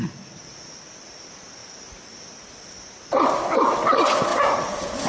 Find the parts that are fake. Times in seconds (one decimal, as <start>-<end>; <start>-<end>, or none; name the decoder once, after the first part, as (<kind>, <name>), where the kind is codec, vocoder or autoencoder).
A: none